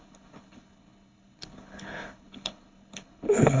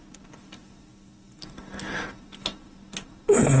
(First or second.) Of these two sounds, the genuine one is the second